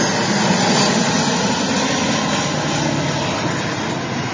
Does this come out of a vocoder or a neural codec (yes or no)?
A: no